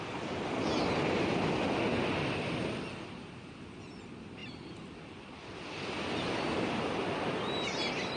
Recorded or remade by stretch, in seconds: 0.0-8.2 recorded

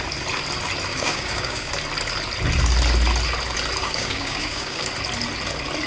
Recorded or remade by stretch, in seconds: 0.0-0.9 recorded; 0.9-1.7 remade; 1.7-3.8 recorded; 3.8-4.9 remade; 4.9-5.9 recorded

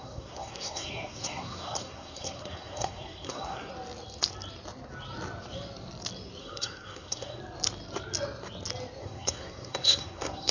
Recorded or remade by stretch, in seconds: 0.0-3.7 remade; 3.7-6.4 recorded; 6.4-7.4 remade; 7.4-9.0 recorded; 9.0-10.5 remade